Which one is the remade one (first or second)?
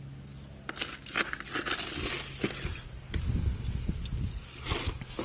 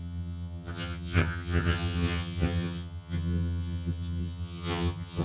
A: second